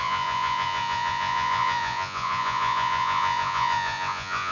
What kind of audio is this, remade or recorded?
remade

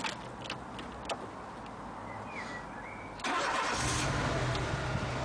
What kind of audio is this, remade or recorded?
recorded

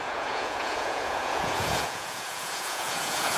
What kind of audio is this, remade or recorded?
remade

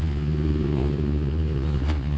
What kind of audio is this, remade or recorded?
remade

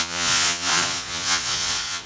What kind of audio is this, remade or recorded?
remade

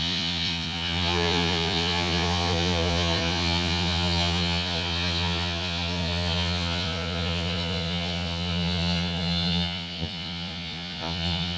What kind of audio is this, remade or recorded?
remade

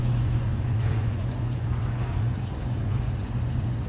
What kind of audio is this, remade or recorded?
remade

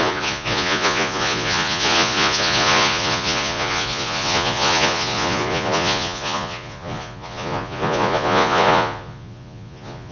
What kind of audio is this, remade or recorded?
remade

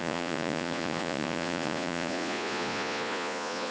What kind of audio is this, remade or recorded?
remade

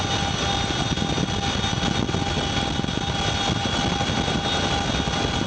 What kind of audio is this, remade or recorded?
recorded